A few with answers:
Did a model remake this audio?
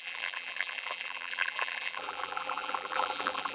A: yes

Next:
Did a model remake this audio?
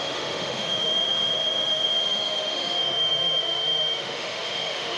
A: yes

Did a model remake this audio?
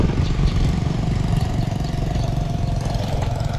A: yes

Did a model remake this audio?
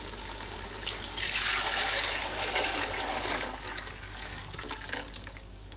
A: yes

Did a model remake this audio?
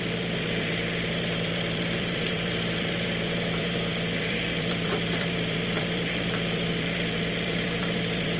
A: yes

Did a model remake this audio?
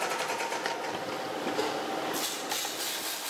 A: no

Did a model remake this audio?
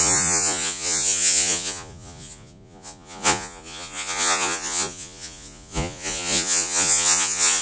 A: yes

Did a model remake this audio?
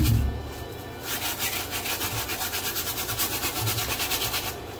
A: no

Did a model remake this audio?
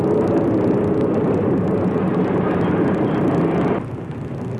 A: no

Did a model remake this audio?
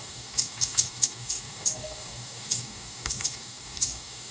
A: yes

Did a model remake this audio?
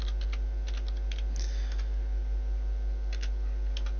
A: no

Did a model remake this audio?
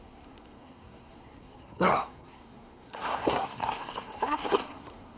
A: yes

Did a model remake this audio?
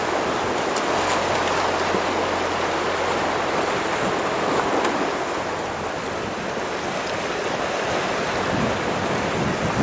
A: no